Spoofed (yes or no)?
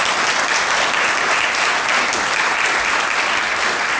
no